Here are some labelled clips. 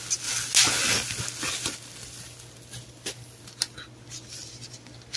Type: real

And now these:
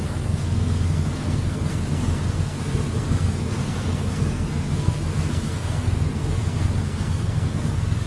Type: fake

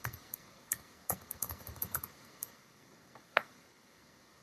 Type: fake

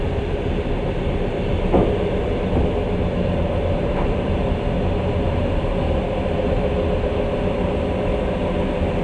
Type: real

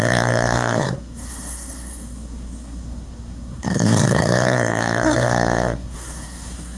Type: fake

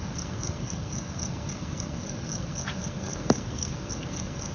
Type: fake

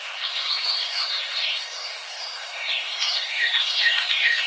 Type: fake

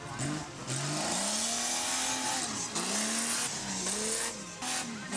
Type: real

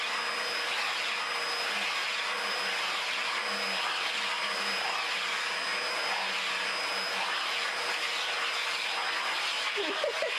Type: real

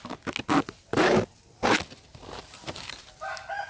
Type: real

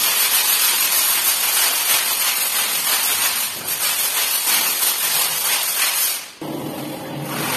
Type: real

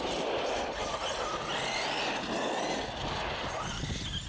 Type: real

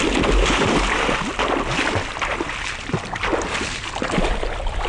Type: real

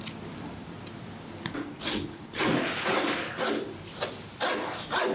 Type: real